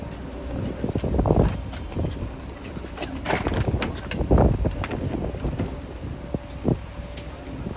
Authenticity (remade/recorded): recorded